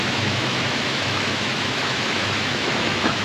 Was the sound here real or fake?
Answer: fake